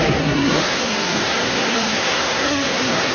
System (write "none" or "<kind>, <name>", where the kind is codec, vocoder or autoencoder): codec, SNAC